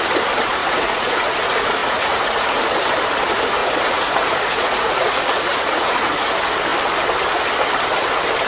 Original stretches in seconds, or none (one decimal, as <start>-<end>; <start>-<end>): 0.0-0.6; 1.3-1.8; 2.6-3.6; 6.3-8.5